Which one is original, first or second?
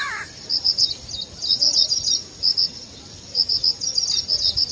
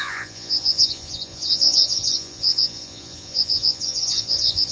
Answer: first